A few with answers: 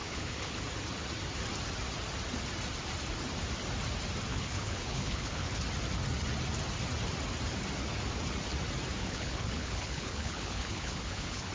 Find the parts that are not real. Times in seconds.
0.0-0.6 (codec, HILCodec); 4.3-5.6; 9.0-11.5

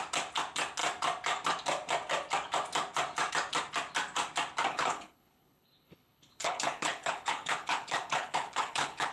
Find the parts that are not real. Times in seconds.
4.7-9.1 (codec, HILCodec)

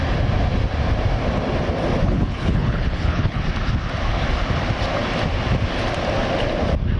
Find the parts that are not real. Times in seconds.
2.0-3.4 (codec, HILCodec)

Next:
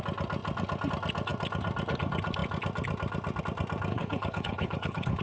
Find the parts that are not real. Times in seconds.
3.9-5.2 (codec, HILCodec)

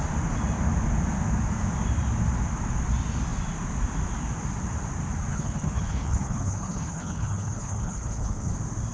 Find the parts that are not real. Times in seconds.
5.3-8.5 (codec, HILCodec)